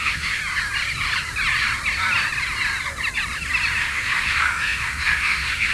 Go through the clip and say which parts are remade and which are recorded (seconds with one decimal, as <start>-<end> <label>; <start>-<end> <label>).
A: 0.0-0.4 remade; 0.4-3.8 recorded; 3.8-5.7 remade